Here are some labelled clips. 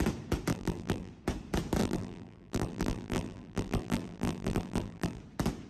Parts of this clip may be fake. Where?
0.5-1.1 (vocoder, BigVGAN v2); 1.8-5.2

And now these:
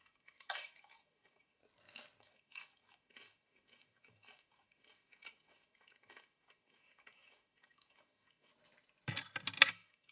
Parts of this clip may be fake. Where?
0.0-1.6 (autoencoder, DAC-VAE); 2.2-8.5; 9.7-10.1

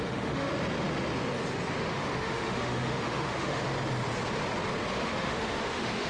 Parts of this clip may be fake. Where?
0.0-0.5 (autoencoder, DAC-VAE); 1.9-3.6; 4.9-6.1

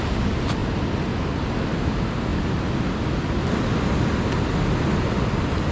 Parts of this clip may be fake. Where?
none

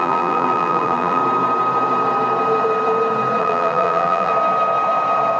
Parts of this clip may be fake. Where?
0.0-1.2 (vocoder, BigVGAN v2); 3.4-4.3

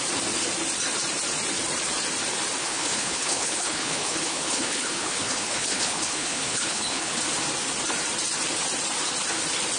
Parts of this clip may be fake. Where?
2.6-7.2 (codec, HILCodec)